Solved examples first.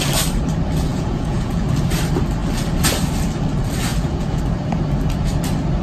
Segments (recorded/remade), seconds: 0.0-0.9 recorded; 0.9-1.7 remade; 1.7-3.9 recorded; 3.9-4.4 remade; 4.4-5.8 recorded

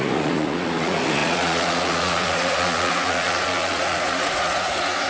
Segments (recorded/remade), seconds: 0.0-5.1 remade

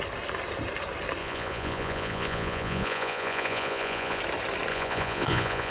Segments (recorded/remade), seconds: 0.0-1.2 recorded; 1.2-4.2 remade; 4.2-4.7 recorded; 4.7-5.7 remade

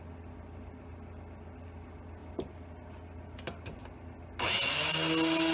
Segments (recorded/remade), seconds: 0.0-5.5 recorded

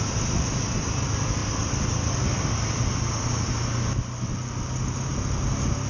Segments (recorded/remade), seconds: 0.0-5.9 recorded